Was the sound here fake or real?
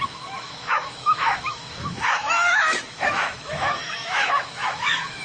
fake